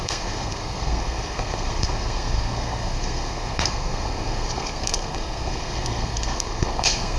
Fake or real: fake